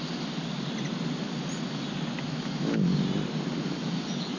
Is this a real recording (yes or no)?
yes